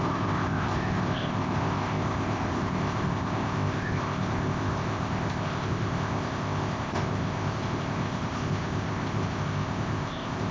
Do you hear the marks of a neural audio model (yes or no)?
yes